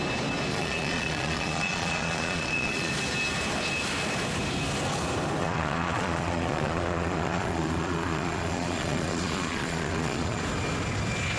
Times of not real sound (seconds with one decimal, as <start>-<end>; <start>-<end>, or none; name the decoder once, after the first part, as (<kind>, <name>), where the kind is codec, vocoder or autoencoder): 0.5-2.9 (vocoder, Vocos); 5.4-10.4